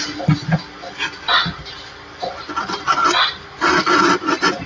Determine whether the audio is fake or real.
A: fake